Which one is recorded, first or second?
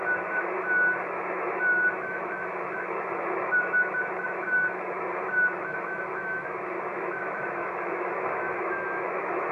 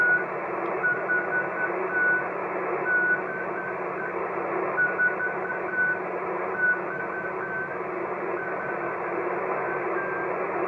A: second